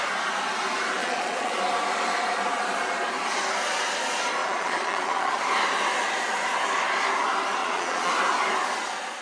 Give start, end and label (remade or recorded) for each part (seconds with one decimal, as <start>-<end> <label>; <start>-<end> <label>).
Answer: 0.0-1.0 recorded; 1.0-1.6 remade; 1.6-4.4 recorded; 4.4-5.4 remade; 5.4-7.6 recorded; 7.6-8.1 remade; 8.1-9.2 recorded